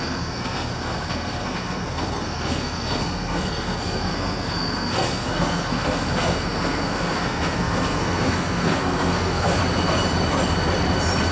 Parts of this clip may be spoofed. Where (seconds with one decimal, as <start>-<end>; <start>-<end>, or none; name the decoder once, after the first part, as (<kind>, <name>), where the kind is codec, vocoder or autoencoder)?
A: 0.0-9.6 (codec, SNAC)